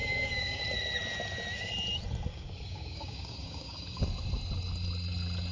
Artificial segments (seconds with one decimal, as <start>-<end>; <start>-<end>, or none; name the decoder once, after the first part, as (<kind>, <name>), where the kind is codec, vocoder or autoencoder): 0.0-0.6 (codec, DAC); 2.3-4.0